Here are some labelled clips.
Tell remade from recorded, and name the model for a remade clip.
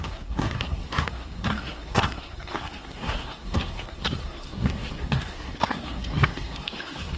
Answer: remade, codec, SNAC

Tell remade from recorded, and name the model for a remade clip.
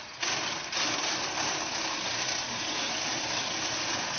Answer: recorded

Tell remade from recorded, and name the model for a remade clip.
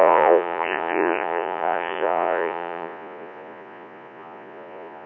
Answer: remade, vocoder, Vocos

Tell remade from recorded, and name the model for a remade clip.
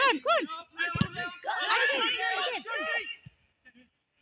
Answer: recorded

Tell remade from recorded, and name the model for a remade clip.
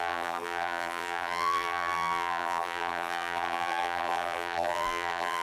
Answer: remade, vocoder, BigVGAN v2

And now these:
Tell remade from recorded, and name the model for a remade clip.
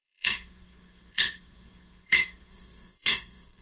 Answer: remade, codec, SNAC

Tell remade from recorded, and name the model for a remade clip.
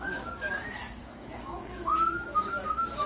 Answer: remade, autoencoder, DAC-VAE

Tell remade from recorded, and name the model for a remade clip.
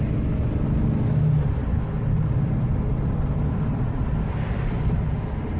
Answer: recorded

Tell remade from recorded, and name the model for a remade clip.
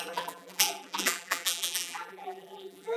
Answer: remade, vocoder, BigVGAN v2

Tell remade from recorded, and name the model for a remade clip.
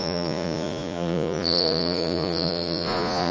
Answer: remade, vocoder, Vocos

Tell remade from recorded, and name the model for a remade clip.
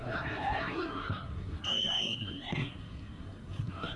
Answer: remade, codec, SNAC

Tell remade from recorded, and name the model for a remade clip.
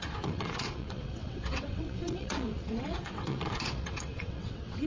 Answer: remade, vocoder, WaveNeXt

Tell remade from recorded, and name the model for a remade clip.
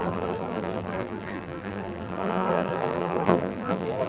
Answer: remade, vocoder, BigVGAN v2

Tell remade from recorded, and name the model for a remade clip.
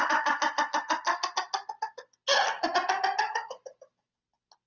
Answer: recorded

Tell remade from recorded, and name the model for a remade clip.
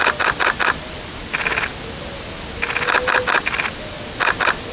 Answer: recorded